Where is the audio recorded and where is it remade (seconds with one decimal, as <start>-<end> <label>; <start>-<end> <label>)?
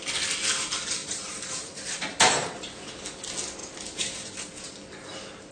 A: 0.0-1.0 recorded; 1.0-3.0 remade; 3.0-3.6 recorded; 3.6-4.6 remade; 4.6-5.5 recorded